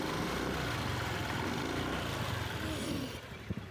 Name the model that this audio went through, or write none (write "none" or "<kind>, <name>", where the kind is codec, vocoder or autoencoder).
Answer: none